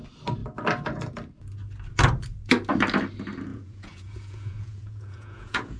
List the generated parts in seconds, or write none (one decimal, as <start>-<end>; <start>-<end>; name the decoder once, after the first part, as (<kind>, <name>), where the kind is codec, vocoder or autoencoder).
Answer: 3.5-5.8 (vocoder, Vocos)